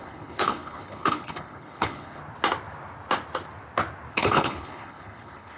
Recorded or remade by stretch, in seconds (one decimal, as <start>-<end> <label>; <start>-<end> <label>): 0.0-2.2 remade; 2.2-4.1 recorded; 4.1-5.6 remade